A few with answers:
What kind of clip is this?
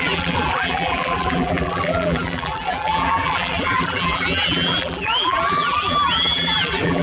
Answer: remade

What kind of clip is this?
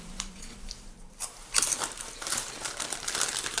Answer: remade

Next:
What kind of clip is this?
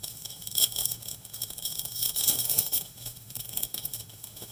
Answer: remade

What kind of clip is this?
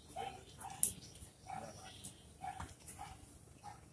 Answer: recorded